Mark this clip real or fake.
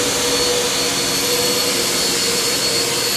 real